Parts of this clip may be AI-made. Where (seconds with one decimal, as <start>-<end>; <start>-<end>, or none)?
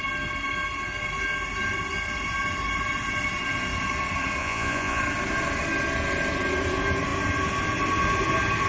4.4-5.0